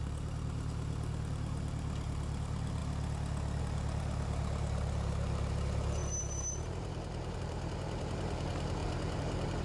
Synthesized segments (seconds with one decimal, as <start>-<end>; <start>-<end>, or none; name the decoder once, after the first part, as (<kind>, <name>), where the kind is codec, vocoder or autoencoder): 0.0-2.8 (vocoder, BigVGAN v2); 3.6-9.6